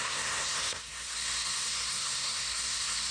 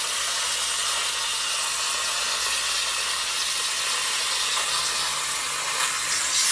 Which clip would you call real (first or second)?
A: second